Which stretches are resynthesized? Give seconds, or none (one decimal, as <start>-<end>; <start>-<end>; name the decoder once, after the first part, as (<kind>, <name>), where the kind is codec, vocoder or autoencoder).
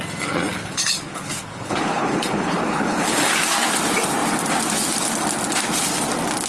0.5-3.3 (codec, HILCodec)